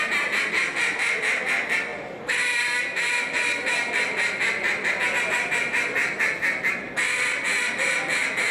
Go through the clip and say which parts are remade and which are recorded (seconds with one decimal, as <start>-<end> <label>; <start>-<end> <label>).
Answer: 0.0-8.5 recorded